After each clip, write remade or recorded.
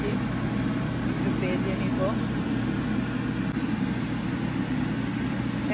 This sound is recorded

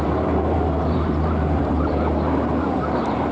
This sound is remade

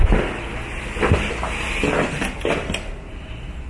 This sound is recorded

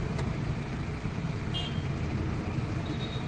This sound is remade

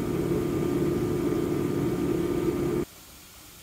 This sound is recorded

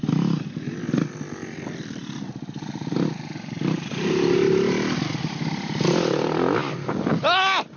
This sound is remade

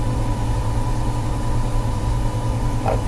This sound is remade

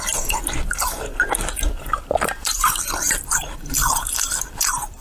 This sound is remade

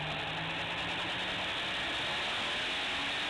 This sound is recorded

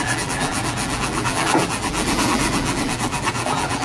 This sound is remade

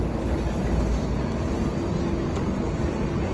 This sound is recorded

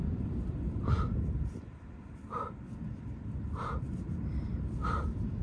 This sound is remade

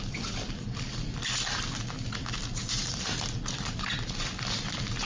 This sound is remade